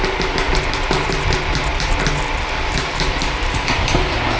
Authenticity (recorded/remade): recorded